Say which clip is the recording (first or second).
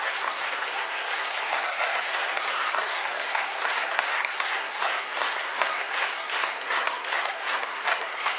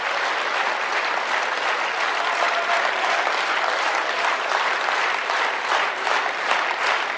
second